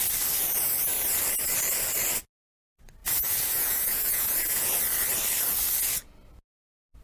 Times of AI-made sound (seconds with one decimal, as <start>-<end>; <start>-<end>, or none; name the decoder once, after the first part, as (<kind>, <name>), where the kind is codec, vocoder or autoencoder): 3.0-4.8 (vocoder, Vocos)